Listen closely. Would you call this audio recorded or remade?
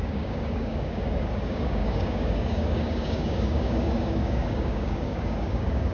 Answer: remade